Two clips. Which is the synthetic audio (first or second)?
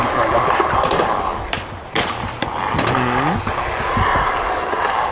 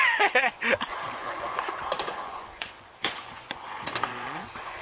second